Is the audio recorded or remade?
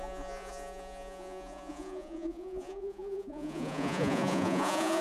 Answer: remade